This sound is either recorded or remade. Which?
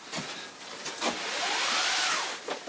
recorded